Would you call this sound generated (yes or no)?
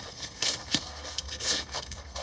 yes